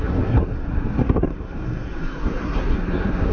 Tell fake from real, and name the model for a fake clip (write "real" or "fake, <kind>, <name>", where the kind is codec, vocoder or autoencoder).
fake, codec, SNAC